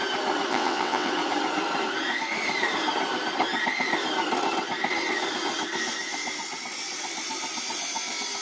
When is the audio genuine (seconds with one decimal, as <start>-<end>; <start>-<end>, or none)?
0.0-0.5; 1.1-8.4